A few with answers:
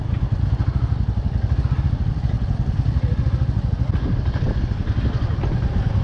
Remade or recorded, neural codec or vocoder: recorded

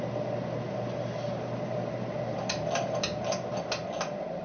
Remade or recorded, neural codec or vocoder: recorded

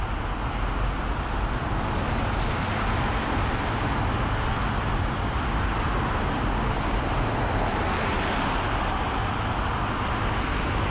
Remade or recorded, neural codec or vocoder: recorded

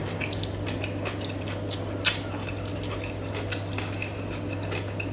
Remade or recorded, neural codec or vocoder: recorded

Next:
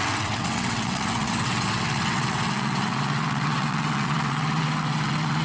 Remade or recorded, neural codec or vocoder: remade, vocoder, WaveNeXt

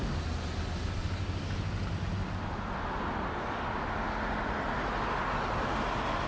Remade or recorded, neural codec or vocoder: recorded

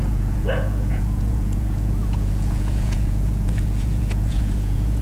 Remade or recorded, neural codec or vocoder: remade, vocoder, Vocos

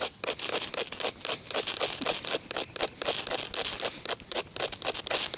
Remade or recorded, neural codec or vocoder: recorded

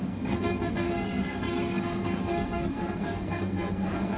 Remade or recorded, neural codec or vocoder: remade, codec, SNAC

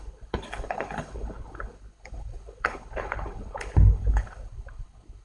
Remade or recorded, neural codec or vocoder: remade, codec, HILCodec